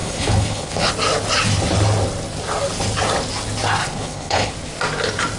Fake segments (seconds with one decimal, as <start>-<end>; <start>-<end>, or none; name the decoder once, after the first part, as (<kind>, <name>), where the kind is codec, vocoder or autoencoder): 0.0-0.9 (codec, HILCodec); 3.8-4.5